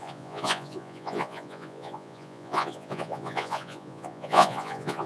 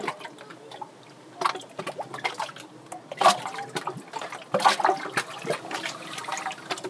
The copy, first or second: first